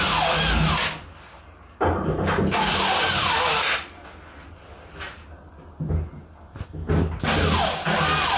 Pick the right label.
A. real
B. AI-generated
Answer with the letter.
A